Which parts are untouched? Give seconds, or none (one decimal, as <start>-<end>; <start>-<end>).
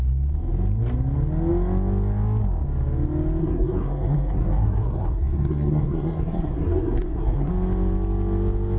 0.0-3.4; 7.5-8.8